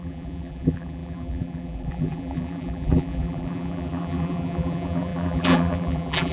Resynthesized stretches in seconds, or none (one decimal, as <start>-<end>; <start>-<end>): 0.0-6.3